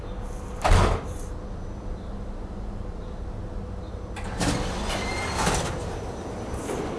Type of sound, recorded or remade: recorded